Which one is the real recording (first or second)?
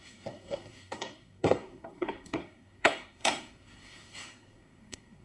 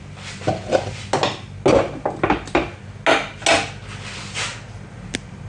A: second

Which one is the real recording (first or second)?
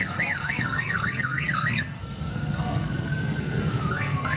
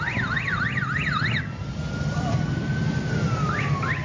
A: second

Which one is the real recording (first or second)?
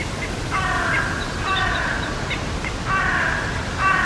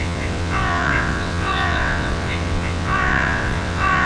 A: first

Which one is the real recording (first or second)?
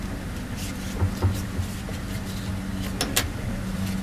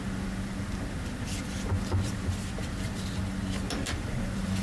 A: first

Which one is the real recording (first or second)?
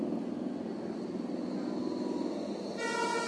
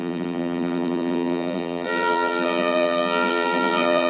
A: first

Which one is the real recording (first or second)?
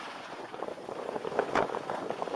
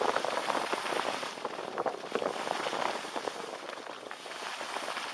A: second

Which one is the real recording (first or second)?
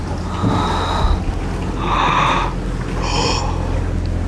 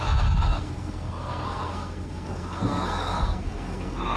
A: first